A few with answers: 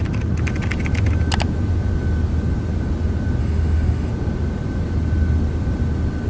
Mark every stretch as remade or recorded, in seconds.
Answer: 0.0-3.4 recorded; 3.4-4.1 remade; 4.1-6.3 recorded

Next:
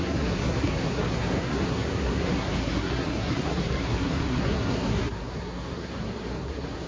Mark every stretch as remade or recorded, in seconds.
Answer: 0.0-6.9 remade